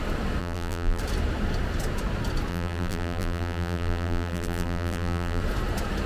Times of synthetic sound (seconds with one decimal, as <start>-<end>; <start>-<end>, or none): 0.4-1.0; 2.5-5.4